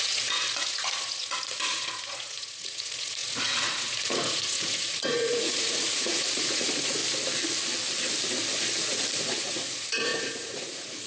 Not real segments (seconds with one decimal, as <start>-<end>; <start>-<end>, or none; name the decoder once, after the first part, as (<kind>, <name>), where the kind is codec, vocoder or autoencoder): 0.0-7.0 (vocoder, Vocos); 9.4-11.1